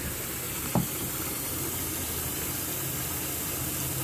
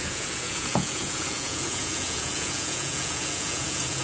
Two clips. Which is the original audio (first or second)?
first